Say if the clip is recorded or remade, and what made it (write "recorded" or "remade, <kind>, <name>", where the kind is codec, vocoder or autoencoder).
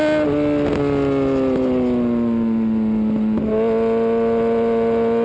recorded